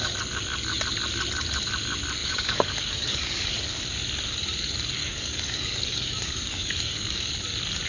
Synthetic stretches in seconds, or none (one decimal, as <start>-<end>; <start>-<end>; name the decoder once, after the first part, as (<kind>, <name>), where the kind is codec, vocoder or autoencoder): 2.2-3.5 (codec, DAC); 5.0-7.3